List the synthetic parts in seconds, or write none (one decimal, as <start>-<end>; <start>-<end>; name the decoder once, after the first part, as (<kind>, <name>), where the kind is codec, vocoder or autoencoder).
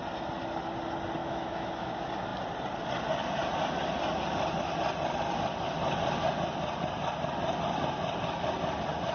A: 1.2-1.9 (autoencoder, DAC-VAE)